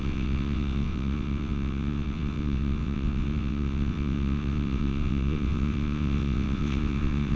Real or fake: fake